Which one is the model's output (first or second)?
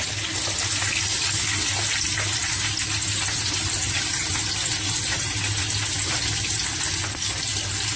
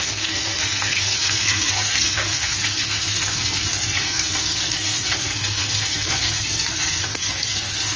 second